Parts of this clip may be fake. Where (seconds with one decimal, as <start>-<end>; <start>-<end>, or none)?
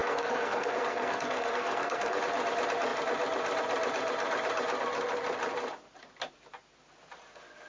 0.0-2.2